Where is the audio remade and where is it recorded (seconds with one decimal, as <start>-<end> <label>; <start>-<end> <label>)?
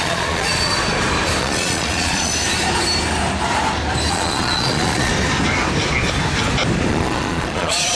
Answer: 0.0-0.7 remade; 0.7-1.4 recorded; 1.4-2.3 remade; 2.3-4.1 recorded; 4.1-5.1 remade; 5.1-6.9 recorded; 6.9-7.9 remade